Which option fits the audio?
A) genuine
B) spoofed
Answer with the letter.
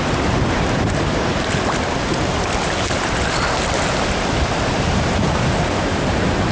A